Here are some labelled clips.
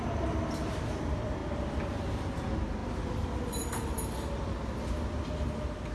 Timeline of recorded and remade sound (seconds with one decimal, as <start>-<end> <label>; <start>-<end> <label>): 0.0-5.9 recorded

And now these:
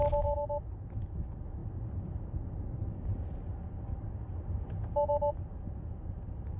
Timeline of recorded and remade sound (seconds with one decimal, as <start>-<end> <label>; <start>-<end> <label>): 0.0-6.6 recorded

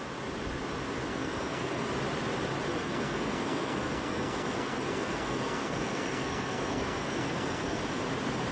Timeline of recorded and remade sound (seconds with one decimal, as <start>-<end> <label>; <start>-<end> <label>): 0.0-1.1 recorded; 1.1-1.9 remade; 1.9-2.7 recorded; 2.7-7.8 remade; 7.8-8.5 recorded

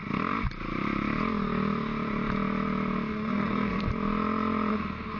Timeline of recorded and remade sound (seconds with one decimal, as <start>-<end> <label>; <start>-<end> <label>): 0.0-3.1 recorded; 3.1-3.9 remade; 3.9-4.7 recorded; 4.7-5.2 remade